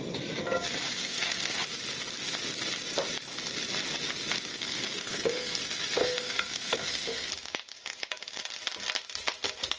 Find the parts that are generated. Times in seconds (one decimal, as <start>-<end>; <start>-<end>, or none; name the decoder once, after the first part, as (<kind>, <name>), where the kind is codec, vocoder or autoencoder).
0.9-1.6 (codec, SNAC); 4.5-5.6; 6.0-7.3